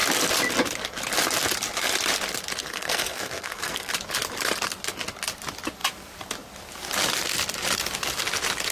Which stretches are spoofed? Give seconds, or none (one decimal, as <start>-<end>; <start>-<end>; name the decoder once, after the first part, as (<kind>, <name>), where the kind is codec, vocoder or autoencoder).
2.6-3.9 (codec, SNAC)